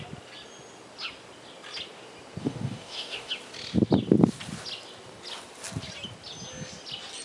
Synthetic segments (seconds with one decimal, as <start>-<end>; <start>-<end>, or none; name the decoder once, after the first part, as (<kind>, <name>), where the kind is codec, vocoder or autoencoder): 2.4-3.3 (codec, DAC)